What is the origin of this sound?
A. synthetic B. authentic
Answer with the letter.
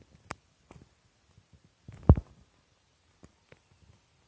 B